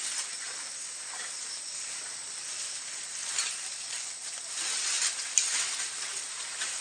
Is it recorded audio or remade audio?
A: recorded